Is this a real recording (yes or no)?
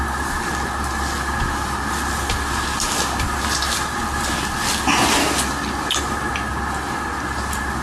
yes